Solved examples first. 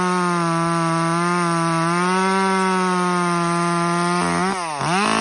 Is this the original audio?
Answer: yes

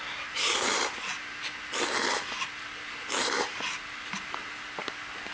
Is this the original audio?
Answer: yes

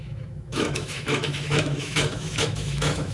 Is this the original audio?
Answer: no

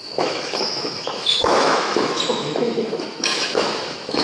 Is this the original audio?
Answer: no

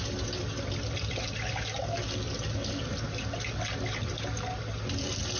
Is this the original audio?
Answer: yes